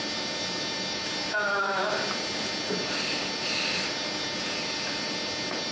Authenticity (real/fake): fake